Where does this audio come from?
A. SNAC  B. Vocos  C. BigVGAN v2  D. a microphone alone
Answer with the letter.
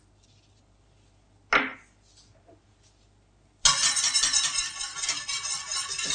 D